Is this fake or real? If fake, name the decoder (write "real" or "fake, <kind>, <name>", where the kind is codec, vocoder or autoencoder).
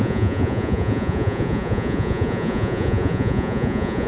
fake, vocoder, Vocos